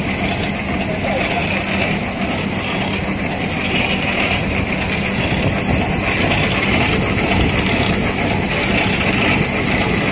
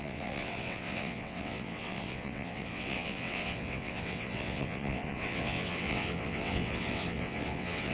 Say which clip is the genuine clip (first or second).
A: first